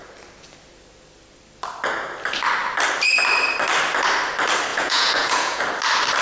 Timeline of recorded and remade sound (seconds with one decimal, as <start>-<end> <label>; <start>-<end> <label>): 0.0-4.7 recorded; 4.7-5.6 remade; 5.6-6.2 recorded